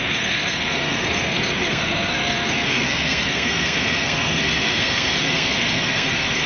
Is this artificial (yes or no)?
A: yes